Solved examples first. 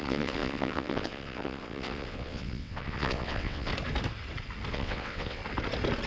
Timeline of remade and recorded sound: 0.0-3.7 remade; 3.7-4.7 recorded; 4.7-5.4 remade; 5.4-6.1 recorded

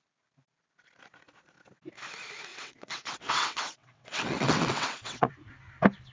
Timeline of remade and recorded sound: 0.0-2.5 recorded; 2.5-5.3 remade; 5.3-6.1 recorded

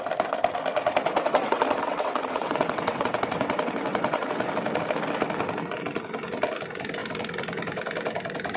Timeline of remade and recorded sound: 0.0-1.1 recorded; 1.1-4.5 remade; 4.5-8.6 recorded

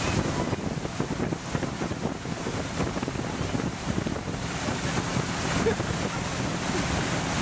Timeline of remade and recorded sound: 0.0-7.4 recorded